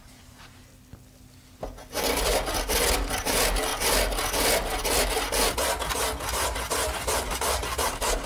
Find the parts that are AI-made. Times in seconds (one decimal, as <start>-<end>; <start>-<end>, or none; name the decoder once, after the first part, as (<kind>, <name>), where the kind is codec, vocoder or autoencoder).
0.0-0.6 (vocoder, BigVGAN v2); 3.2-3.7; 7.2-8.3